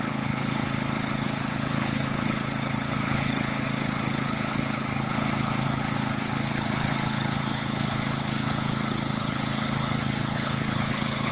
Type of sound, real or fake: fake